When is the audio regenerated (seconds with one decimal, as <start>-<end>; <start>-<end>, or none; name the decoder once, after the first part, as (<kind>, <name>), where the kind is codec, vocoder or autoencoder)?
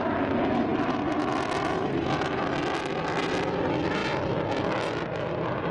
none